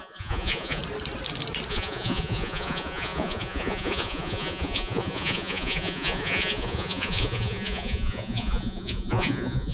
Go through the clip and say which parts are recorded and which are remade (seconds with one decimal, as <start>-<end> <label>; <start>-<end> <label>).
0.0-0.8 remade; 0.8-1.7 recorded; 1.7-9.7 remade